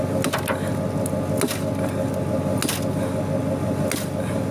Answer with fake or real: real